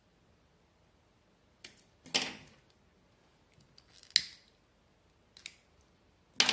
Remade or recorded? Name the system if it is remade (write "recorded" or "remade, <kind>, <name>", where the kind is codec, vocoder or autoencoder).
recorded